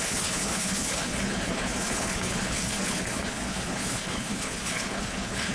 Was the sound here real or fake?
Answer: fake